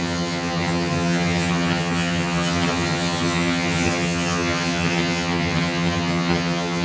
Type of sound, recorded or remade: remade